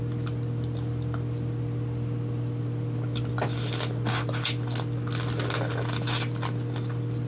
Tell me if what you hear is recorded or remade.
recorded